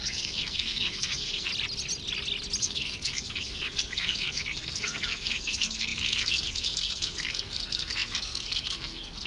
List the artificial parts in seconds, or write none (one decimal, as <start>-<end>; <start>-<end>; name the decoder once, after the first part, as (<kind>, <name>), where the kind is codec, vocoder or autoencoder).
0.0-1.5 (codec, SNAC); 2.6-9.3